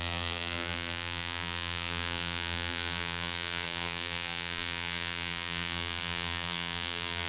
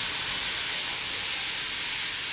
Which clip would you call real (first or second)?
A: second